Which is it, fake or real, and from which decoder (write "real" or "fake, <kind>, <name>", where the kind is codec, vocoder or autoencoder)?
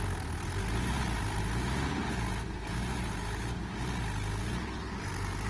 real